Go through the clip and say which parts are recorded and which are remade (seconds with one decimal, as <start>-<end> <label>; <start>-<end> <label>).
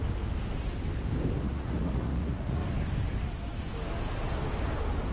0.0-1.4 recorded; 1.4-2.6 remade; 2.6-5.1 recorded